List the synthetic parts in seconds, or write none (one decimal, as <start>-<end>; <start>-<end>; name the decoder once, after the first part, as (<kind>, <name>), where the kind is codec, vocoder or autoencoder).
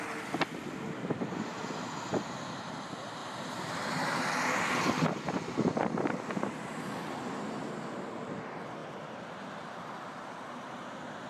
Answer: 5.7-6.7 (vocoder, BigVGAN v2); 8.8-9.4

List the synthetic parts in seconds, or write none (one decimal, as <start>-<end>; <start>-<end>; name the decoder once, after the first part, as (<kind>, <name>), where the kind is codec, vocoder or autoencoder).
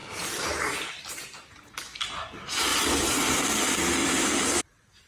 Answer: 2.7-3.4 (vocoder, BigVGAN v2); 4.0-4.6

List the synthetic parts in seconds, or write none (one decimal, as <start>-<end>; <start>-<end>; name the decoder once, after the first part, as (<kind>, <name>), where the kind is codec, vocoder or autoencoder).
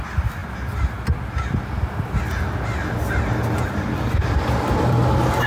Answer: 0.0-0.4 (vocoder, BigVGAN v2); 3.7-5.5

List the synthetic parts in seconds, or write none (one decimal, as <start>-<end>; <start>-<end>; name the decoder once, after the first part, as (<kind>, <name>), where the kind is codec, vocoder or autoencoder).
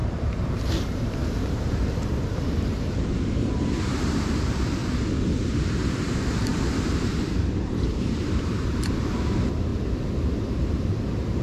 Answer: 0.0-4.8 (vocoder, BigVGAN v2); 5.4-9.7; 10.3-11.4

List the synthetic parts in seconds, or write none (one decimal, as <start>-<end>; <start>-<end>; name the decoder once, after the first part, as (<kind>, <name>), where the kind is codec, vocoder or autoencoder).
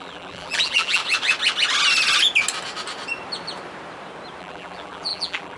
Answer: 0.0-1.0 (vocoder, BigVGAN v2); 4.4-5.6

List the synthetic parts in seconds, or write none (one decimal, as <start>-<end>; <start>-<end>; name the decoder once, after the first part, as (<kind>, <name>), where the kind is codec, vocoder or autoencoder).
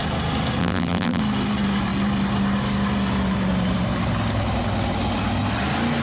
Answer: 0.6-1.2 (vocoder, BigVGAN v2)